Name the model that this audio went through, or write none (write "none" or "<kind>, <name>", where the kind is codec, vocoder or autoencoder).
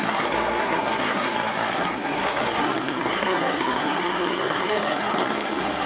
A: codec, SNAC